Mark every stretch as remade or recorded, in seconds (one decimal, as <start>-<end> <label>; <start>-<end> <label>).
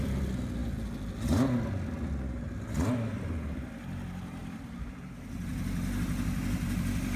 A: 0.0-7.2 recorded